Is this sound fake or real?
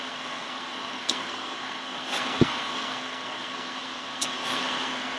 fake